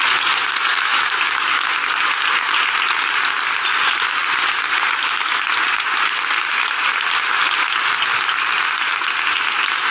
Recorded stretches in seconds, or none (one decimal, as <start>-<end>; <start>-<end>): 0.0-0.7; 1.8-9.9